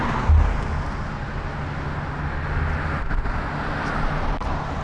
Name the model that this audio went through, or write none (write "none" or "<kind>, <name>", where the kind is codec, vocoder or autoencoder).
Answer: none